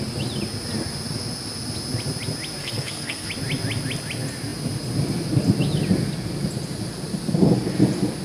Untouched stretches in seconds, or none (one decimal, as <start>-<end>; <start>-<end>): 0.0-2.6; 3.3-8.2